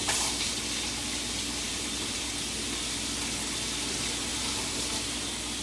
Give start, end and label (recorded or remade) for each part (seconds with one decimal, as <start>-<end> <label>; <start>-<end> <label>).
0.0-1.7 recorded; 1.7-2.3 remade; 2.3-4.3 recorded; 4.3-4.8 remade; 4.8-5.6 recorded